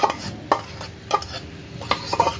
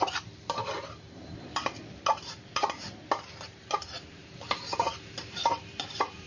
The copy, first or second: second